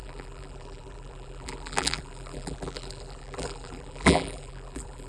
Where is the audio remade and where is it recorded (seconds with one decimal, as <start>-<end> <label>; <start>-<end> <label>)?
0.0-5.1 remade